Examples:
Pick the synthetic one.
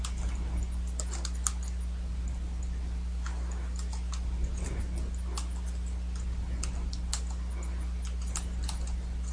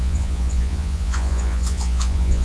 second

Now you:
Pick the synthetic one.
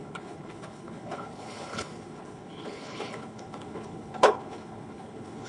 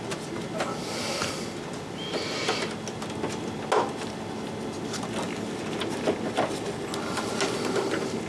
first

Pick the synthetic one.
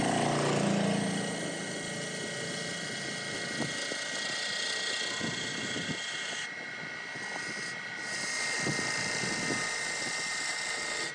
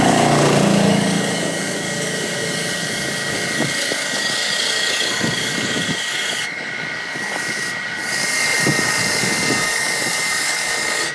second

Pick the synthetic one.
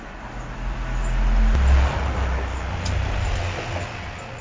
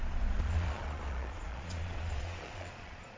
second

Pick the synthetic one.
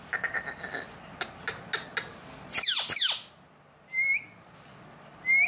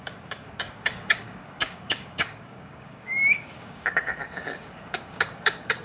second